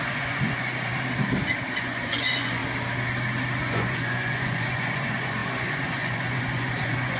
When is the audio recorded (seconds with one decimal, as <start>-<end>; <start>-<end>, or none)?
0.9-1.8; 2.6-3.6